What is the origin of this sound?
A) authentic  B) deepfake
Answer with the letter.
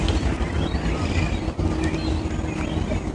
A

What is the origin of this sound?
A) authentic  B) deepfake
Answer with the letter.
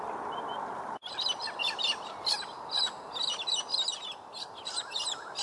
A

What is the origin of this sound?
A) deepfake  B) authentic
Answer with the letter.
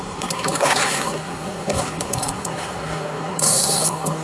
A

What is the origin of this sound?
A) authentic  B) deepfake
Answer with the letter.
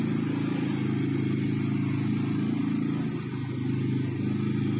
A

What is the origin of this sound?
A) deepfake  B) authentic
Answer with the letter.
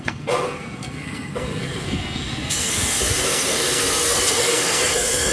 A